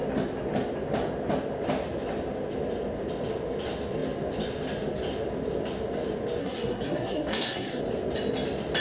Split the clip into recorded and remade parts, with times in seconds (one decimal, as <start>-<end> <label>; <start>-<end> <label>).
0.0-6.4 recorded; 6.4-7.8 remade; 7.8-8.8 recorded